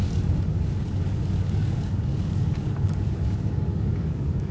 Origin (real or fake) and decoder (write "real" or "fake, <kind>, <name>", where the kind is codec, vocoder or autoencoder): fake, codec, DAC